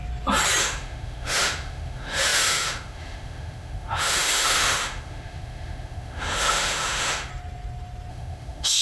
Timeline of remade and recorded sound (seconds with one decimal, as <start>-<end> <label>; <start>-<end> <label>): 0.0-0.6 recorded; 0.6-7.3 remade; 7.3-8.1 recorded; 8.1-8.8 remade